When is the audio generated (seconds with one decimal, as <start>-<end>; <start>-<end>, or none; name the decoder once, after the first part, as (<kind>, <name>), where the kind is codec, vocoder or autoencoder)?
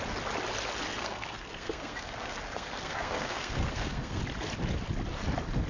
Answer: 0.9-4.2 (codec, SNAC)